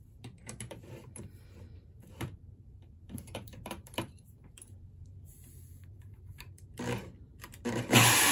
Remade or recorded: remade